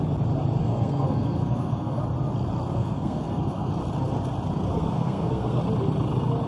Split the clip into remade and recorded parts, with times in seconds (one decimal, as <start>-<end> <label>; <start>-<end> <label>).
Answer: 0.0-0.6 recorded; 0.6-2.0 remade; 2.0-2.7 recorded; 2.7-3.7 remade; 3.7-4.7 recorded; 4.7-5.6 remade; 5.6-6.5 recorded